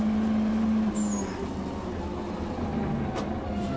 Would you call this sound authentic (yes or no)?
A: yes